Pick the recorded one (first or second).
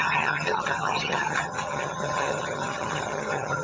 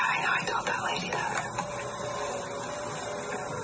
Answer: second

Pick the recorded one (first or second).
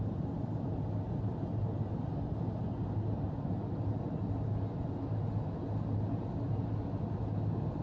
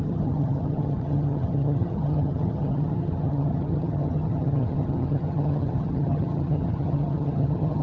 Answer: first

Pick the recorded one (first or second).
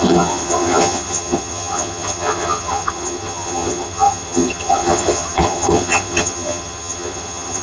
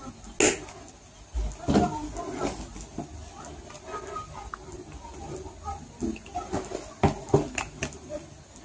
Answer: second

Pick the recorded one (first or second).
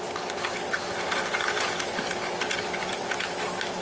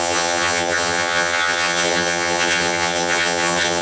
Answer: first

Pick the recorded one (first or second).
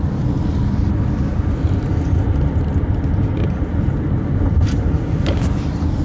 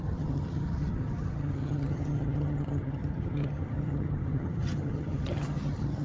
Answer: first